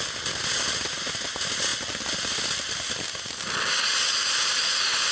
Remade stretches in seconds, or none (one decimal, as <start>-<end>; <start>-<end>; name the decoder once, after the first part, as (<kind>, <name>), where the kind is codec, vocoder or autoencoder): none